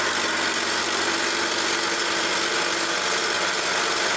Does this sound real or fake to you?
real